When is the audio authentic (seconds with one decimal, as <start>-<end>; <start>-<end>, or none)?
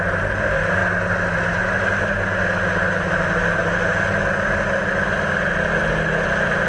0.0-6.7